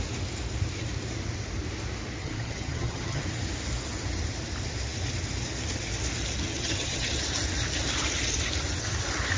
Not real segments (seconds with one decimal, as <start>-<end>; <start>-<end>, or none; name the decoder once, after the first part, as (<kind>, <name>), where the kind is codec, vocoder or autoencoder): 2.2-3.2 (vocoder, HiFi-GAN); 6.5-7.2

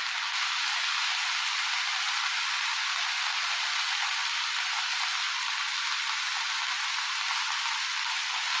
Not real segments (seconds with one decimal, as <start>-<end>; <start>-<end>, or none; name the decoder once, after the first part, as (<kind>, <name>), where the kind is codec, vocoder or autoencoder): none

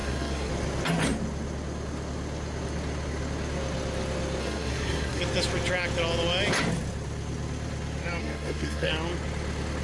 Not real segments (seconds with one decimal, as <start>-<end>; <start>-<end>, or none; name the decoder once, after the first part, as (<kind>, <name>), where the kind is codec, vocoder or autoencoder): 0.0-0.5 (codec, SNAC); 4.4-5.2; 8.2-8.9

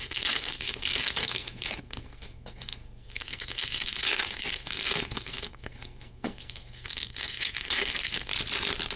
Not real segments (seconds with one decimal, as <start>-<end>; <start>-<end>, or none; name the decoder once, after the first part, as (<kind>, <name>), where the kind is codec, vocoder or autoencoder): 0.0-8.3 (codec, SNAC)

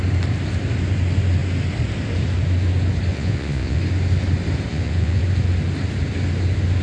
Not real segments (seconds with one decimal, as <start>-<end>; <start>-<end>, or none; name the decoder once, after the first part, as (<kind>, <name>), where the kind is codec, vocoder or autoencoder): 3.1-3.8 (vocoder, Vocos); 4.7-5.2

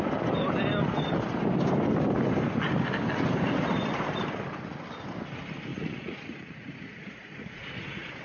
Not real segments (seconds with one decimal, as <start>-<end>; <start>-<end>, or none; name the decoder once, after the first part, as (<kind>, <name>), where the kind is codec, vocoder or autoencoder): 5.7-8.2 (vocoder, Vocos)

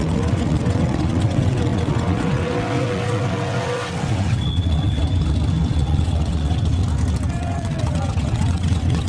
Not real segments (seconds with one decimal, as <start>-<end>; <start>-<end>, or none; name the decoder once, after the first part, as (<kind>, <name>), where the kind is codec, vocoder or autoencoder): 0.0-5.0 (vocoder, WaveNeXt); 5.7-6.8; 7.3-9.1